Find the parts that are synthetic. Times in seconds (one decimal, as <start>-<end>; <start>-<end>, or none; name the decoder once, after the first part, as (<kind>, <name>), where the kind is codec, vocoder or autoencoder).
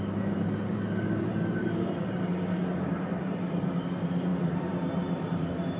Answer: 0.0-2.3 (vocoder, BigVGAN v2); 3.2-5.8